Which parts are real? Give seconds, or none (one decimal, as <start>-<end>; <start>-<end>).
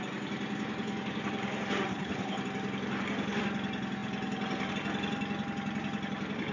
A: 0.0-1.9; 2.4-6.5